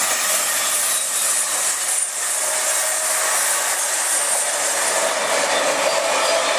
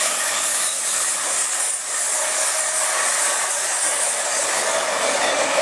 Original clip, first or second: first